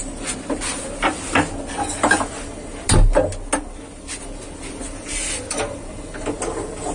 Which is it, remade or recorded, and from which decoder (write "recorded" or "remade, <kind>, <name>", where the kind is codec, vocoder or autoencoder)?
recorded